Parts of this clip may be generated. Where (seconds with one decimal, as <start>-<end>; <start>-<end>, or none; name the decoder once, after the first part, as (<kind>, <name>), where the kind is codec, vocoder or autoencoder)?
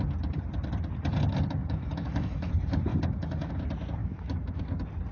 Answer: 1.6-2.5 (autoencoder, DAC-VAE); 2.9-3.5; 4.0-4.6